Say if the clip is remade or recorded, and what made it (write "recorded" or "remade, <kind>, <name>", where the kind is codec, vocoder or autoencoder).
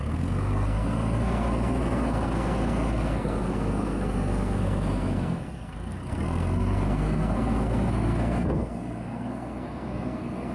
remade, codec, SNAC